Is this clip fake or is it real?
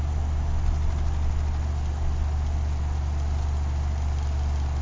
real